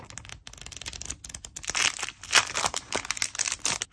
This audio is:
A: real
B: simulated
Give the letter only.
A